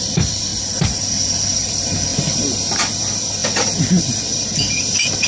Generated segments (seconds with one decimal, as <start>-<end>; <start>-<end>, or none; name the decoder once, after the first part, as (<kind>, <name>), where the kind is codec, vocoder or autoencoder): 0.0-0.5 (vocoder, BigVGAN v2); 1.6-5.3